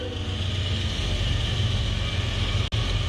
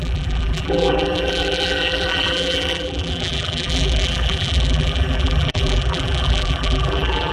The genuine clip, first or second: first